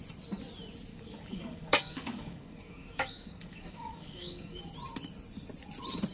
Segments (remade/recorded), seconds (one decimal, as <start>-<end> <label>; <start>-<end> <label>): 0.0-0.9 recorded; 0.9-4.6 remade; 4.6-6.1 recorded